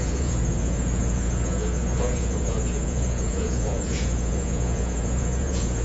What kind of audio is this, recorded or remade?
remade